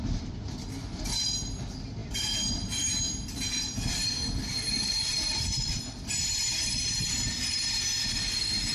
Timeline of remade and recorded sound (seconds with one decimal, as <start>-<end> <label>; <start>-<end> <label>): 0.0-8.7 remade